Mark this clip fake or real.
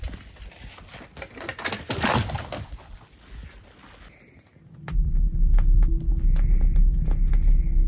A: real